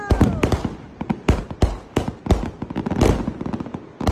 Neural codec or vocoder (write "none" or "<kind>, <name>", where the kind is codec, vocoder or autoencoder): none